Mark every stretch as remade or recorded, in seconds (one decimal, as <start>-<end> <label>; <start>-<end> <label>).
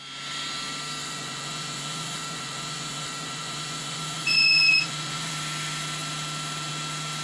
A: 0.0-1.0 recorded; 1.0-5.3 remade; 5.3-7.2 recorded